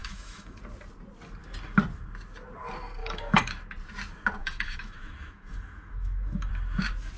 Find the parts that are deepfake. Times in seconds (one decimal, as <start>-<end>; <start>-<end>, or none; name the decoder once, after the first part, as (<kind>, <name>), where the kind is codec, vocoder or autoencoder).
0.0-0.6 (autoencoder, DAC-VAE); 3.0-3.6; 4.4-6.5